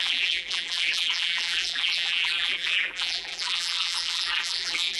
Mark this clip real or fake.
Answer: fake